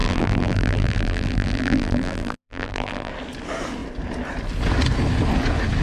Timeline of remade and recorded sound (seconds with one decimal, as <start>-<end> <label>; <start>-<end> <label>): 0.0-3.1 remade; 3.1-5.8 recorded